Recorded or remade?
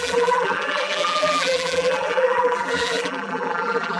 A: remade